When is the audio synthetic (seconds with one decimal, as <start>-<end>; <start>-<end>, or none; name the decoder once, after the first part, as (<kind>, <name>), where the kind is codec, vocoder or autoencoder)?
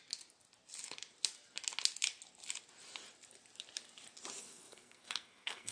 4.4-5.7 (codec, SNAC)